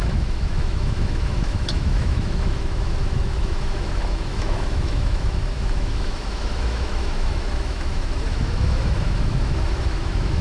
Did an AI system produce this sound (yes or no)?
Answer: yes